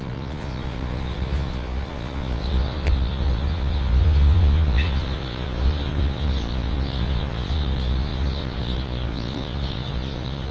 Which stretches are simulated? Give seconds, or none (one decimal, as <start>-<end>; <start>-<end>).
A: 0.0-10.5